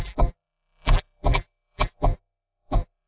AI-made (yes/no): yes